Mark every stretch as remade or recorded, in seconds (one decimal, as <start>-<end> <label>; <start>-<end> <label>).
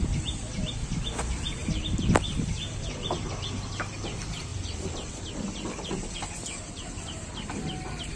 0.0-8.2 recorded